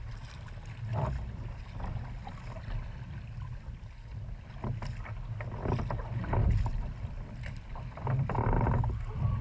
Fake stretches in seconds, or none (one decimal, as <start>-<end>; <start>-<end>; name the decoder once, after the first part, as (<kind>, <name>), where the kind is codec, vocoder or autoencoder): 0.9-3.6 (vocoder, BigVGAN v2); 6.4-8.5